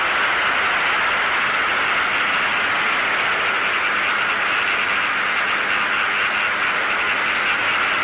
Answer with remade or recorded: recorded